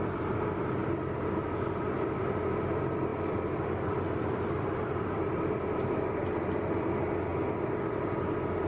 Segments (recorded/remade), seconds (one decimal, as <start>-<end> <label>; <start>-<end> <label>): 0.0-0.8 recorded; 0.8-1.9 remade; 1.9-3.1 recorded; 3.1-6.4 remade; 6.4-8.7 recorded